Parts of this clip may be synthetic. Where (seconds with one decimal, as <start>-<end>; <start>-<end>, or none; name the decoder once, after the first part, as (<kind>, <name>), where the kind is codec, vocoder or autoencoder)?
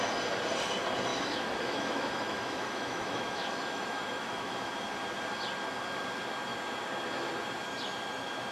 1.1-4.7 (autoencoder, DAC-VAE)